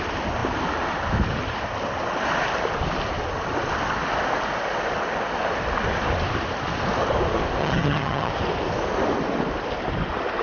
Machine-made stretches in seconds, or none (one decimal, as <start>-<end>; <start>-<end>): 7.6-8.3